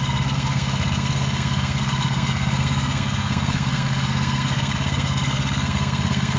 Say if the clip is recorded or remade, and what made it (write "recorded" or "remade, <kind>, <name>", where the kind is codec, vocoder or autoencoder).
remade, codec, SNAC